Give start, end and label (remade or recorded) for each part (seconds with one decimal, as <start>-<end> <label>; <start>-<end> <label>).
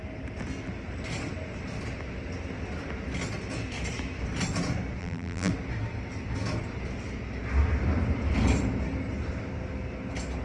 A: 0.0-5.0 recorded; 5.0-5.5 remade; 5.5-10.4 recorded